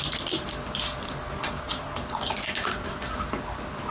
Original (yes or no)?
yes